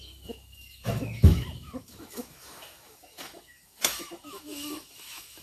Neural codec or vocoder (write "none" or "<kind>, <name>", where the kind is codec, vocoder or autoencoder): autoencoder, DAC-VAE